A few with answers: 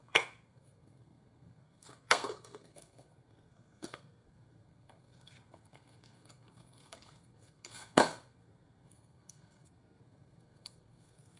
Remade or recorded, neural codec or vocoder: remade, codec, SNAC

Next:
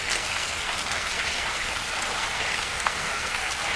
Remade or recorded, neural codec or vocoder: remade, codec, SNAC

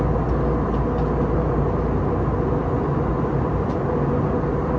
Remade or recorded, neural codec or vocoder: recorded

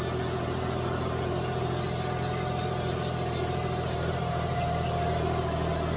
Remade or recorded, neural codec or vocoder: recorded